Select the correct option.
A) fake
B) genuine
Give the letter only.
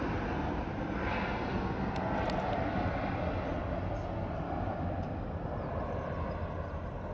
B